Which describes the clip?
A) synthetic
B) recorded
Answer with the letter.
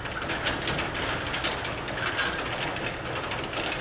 B